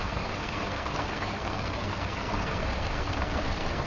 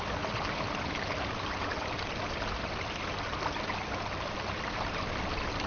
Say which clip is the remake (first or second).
first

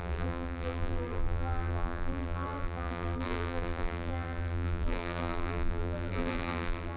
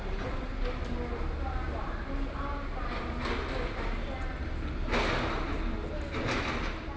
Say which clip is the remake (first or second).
first